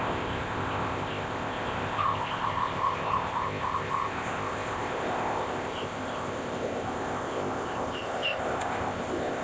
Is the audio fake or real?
fake